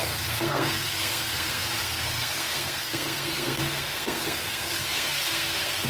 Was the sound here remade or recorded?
remade